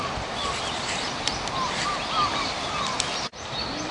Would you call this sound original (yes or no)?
yes